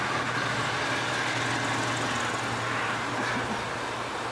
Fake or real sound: real